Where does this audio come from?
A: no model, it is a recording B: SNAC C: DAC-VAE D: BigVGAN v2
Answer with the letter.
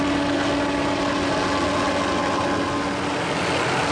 A